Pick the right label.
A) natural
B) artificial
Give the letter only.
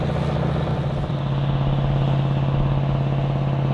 A